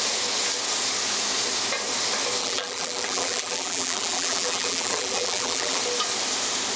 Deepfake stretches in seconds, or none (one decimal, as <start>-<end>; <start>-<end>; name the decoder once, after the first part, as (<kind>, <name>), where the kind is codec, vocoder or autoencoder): 2.4-5.8 (vocoder, BigVGAN v2)